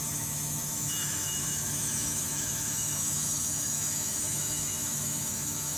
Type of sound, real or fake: fake